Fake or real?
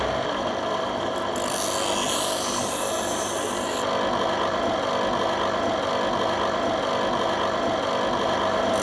real